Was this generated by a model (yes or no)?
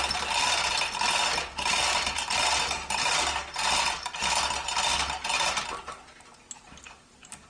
no